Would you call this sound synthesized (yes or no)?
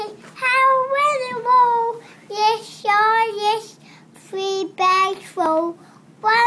no